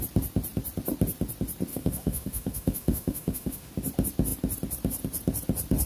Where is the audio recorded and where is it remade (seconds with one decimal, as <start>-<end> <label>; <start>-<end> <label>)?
0.0-1.7 recorded; 1.7-3.7 remade; 3.7-5.9 recorded